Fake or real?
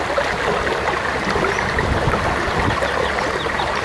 real